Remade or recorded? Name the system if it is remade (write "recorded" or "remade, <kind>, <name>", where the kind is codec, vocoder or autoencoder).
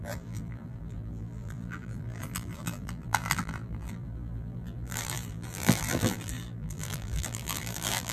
remade, vocoder, BigVGAN v2